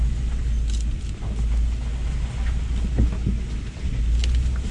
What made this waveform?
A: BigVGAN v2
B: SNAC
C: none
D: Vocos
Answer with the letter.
C